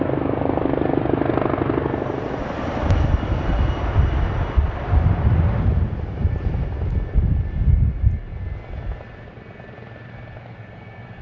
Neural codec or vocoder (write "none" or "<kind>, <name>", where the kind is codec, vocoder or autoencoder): none